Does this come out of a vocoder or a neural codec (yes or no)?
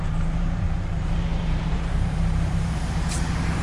yes